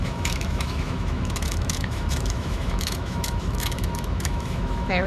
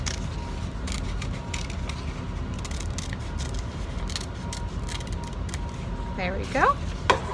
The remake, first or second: first